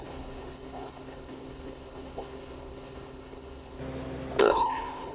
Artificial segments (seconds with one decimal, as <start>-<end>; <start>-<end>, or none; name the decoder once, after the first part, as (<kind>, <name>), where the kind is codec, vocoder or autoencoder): 0.0-3.8 (codec, HILCodec); 4.4-5.1